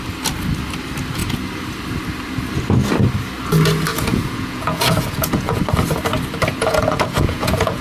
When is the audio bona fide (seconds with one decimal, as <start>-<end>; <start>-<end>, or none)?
0.0-3.9; 5.6-6.5